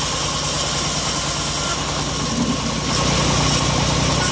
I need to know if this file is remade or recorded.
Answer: recorded